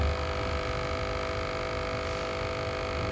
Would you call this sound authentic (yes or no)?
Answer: yes